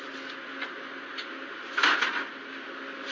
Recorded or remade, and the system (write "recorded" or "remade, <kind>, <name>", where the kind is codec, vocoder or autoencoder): recorded